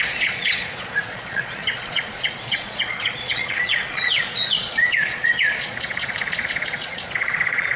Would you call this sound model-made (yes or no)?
yes